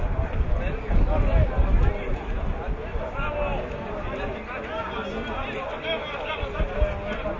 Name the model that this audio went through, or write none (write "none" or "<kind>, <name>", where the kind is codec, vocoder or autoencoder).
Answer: none